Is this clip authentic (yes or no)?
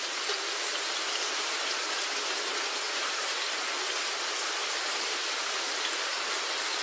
yes